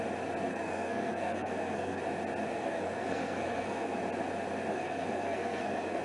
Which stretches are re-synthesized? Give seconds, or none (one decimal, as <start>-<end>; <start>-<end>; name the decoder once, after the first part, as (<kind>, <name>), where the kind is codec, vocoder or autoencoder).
0.5-2.0 (codec, SNAC); 2.5-4.0; 4.7-6.0